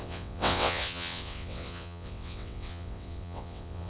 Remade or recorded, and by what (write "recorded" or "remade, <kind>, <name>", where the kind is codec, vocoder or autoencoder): remade, vocoder, WaveNeXt